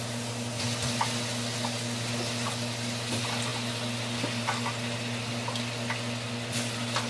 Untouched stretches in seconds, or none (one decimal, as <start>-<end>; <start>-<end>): 0.0-7.1